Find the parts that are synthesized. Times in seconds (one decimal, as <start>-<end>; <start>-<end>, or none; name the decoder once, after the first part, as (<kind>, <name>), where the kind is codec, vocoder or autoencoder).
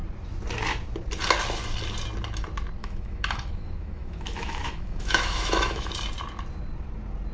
2.8-5.9 (autoencoder, DAC-VAE)